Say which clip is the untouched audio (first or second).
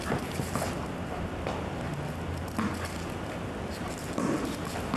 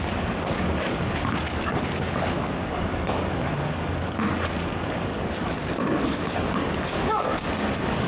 first